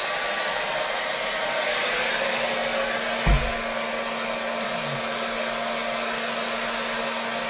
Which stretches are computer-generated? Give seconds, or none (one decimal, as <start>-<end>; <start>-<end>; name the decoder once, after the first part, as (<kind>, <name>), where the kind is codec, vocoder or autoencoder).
none